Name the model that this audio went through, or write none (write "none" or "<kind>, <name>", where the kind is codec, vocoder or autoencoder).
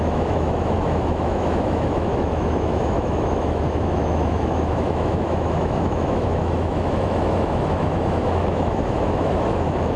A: autoencoder, DAC-VAE